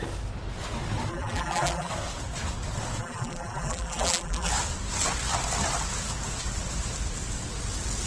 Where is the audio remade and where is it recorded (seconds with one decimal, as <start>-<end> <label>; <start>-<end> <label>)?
0.0-1.1 recorded; 1.1-1.9 remade; 1.9-3.0 recorded; 3.0-4.5 remade; 4.5-8.1 recorded